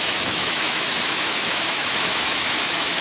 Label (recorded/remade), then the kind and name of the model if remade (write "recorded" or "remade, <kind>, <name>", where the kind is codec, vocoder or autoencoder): remade, autoencoder, DAC-VAE